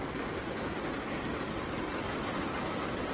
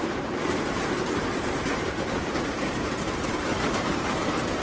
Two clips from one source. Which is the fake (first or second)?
second